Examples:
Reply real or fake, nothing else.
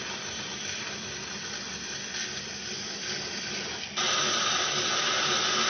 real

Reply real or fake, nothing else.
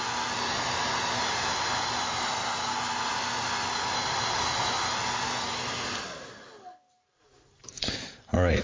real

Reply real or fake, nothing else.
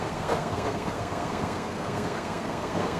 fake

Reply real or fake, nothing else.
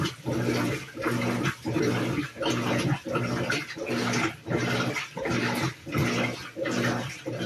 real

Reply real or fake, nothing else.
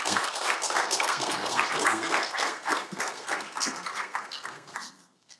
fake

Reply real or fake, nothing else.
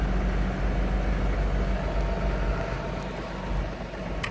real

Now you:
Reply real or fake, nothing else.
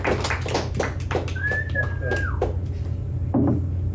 real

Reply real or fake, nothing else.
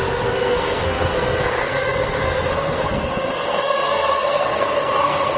fake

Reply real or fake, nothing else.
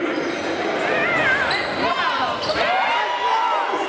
real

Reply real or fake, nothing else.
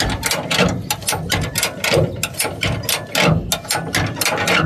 real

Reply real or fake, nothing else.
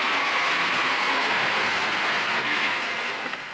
fake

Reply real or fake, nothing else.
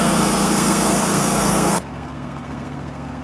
fake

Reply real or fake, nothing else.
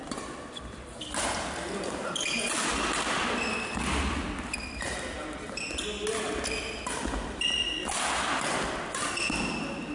real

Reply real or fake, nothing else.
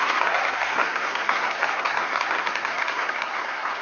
fake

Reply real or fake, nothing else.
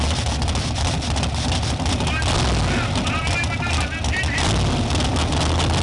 real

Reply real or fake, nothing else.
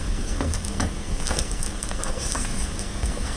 fake